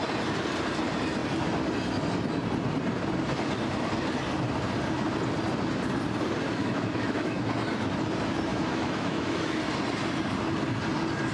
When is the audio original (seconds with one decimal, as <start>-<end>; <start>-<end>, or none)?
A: 0.0-6.6; 7.4-8.5; 9.6-11.3